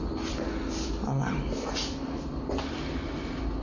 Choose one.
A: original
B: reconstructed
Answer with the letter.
A